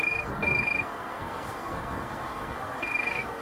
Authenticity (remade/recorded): remade